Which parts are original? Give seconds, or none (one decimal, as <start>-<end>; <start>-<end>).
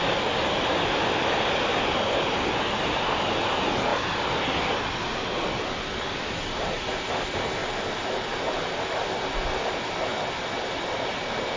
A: 0.0-11.6